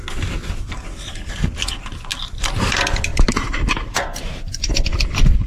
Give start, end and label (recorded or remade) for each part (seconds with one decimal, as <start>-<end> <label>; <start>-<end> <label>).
0.0-4.9 recorded; 4.9-5.5 remade